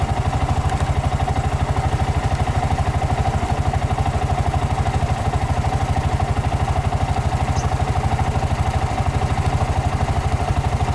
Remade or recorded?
recorded